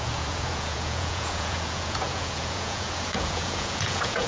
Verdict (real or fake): fake